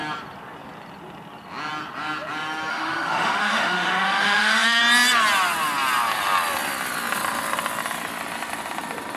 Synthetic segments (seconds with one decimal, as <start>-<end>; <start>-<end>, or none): 2.7-4.8